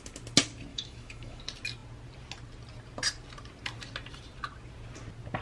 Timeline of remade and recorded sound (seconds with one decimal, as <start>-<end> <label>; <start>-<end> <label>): 0.0-0.7 recorded; 0.7-1.4 remade; 1.4-5.4 recorded